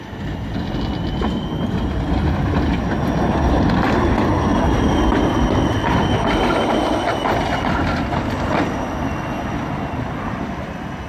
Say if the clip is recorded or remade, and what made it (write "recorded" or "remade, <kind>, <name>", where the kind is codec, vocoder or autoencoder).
recorded